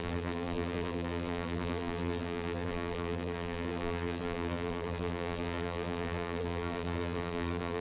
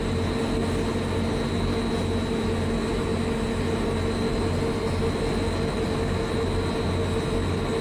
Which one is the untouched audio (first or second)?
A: second